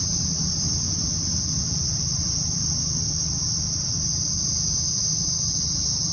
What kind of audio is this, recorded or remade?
remade